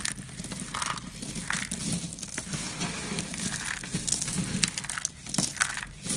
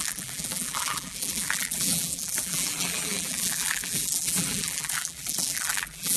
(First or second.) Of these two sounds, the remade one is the second